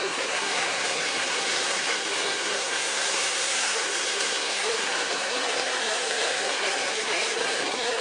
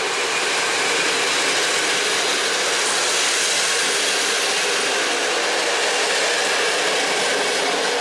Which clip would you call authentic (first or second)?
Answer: second